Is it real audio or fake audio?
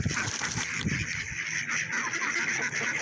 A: real